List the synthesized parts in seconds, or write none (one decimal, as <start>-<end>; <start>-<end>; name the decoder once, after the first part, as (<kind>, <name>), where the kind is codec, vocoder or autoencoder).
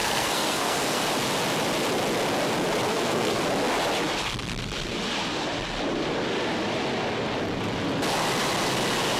0.0-1.0 (codec, SNAC); 2.9-3.4